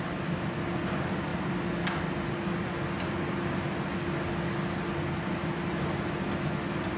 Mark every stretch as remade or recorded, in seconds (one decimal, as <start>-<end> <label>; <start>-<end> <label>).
0.0-7.0 recorded